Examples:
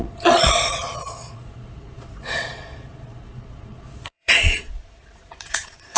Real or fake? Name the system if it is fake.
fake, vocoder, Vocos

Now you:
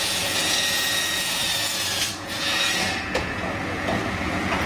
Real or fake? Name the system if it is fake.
fake, vocoder, Vocos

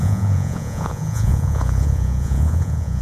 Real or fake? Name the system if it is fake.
fake, vocoder, Vocos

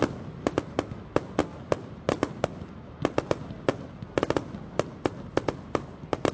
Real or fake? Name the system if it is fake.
real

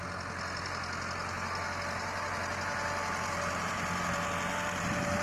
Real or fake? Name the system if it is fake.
real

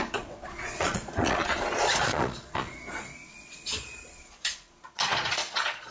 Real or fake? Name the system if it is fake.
fake, vocoder, Vocos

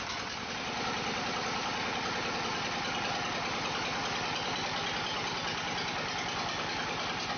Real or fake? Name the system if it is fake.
real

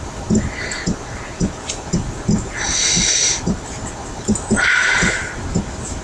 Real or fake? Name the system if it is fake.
real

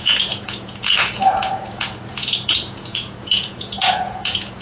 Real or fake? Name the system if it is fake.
fake, vocoder, Vocos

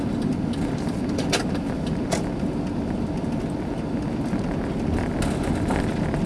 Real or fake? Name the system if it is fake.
real